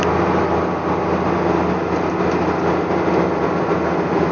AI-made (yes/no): no